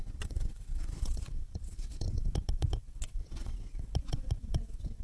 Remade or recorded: remade